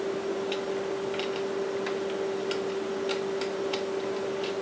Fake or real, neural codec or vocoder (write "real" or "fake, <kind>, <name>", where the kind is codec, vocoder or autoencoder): real